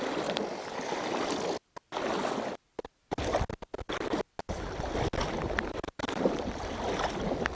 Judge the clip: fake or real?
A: real